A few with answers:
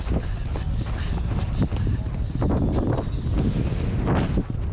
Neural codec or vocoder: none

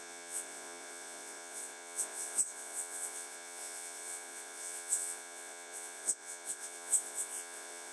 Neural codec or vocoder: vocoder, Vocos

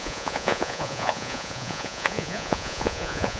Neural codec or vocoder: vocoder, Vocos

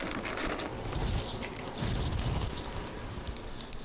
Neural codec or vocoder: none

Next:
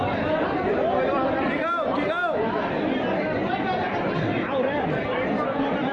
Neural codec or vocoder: none